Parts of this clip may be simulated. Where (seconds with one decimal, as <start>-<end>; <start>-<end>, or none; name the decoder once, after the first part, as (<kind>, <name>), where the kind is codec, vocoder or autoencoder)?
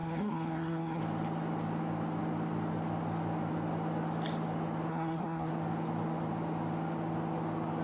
0.0-1.0 (codec, SNAC); 4.9-5.5